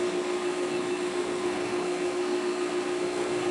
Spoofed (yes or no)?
yes